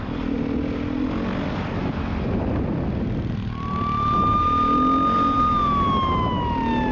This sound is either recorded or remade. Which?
recorded